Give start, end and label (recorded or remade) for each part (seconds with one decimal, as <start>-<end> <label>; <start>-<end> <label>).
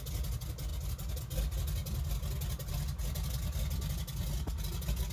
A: 0.0-5.1 recorded